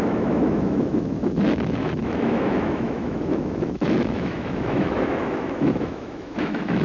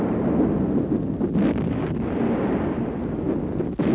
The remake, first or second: first